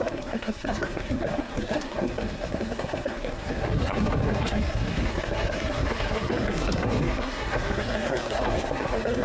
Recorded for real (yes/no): no